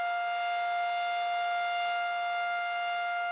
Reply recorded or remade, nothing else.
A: recorded